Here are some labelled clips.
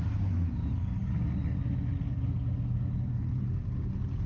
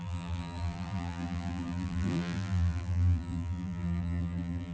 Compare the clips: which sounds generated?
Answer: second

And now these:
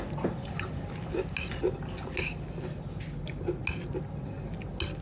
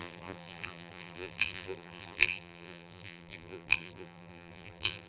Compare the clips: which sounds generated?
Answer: second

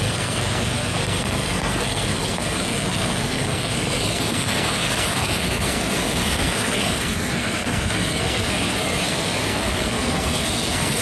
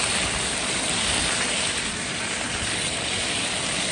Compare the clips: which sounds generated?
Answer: first